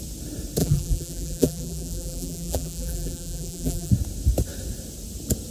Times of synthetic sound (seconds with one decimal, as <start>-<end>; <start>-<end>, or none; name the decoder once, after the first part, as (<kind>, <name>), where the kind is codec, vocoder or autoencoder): 0.6-3.9 (vocoder, BigVGAN v2)